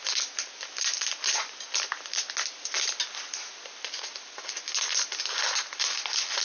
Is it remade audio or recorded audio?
recorded